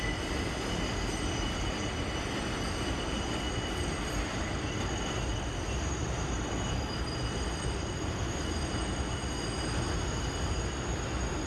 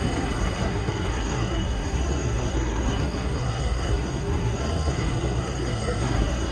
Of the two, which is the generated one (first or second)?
second